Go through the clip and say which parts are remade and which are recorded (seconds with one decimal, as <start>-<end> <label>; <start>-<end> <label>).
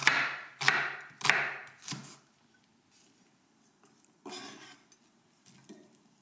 0.0-0.6 remade; 0.6-6.2 recorded